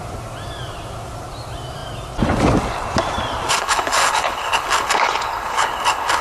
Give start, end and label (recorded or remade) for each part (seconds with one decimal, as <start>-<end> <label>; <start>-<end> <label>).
0.0-3.5 recorded; 3.5-6.2 remade